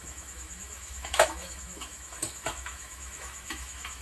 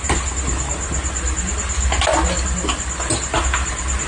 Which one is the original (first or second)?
second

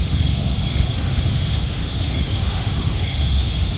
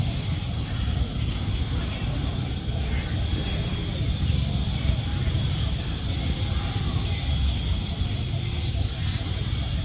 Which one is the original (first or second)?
second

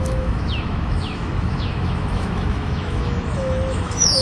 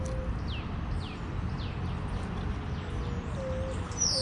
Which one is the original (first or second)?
second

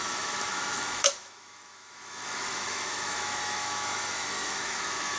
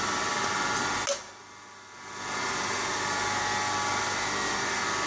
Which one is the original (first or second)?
second